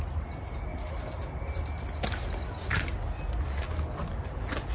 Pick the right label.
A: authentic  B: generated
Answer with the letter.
A